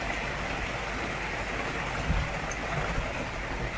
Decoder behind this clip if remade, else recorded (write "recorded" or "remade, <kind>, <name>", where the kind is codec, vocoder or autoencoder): recorded